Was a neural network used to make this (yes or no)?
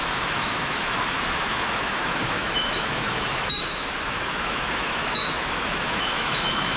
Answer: yes